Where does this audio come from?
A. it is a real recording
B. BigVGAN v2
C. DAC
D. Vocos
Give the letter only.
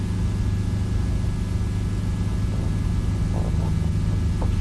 A